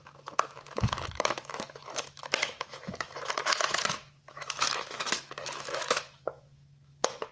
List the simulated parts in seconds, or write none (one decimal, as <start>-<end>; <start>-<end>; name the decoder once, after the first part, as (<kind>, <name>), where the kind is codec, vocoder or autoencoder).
0.0-7.3 (autoencoder, DAC-VAE)